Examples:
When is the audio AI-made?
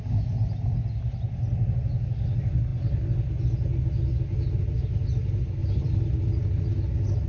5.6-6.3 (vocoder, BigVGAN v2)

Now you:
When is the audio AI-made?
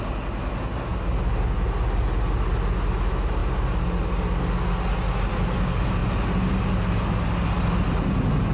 none